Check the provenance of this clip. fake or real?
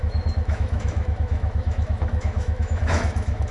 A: fake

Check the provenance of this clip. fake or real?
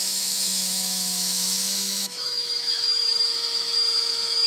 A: fake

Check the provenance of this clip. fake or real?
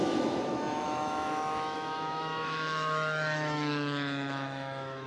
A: fake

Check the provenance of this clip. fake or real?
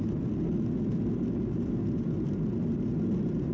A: real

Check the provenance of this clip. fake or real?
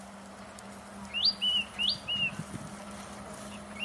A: real